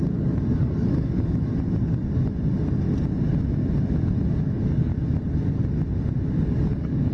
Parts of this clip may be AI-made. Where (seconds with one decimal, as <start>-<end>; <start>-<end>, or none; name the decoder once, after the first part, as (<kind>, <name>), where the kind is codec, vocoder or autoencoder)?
0.0-1.5 (codec, DAC); 4.4-4.9; 6.4-7.1